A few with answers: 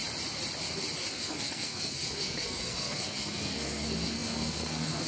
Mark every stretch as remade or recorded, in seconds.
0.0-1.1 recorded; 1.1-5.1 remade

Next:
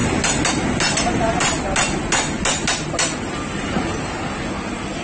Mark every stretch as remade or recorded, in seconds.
0.0-5.0 recorded

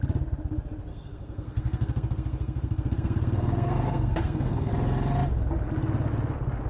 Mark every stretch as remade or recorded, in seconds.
0.0-0.9 recorded; 0.9-4.7 remade; 4.7-6.7 recorded